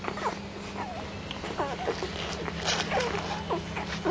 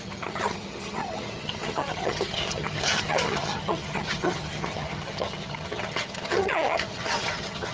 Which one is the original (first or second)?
first